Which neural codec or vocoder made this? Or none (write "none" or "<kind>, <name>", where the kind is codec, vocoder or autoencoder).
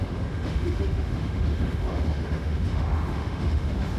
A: autoencoder, DAC-VAE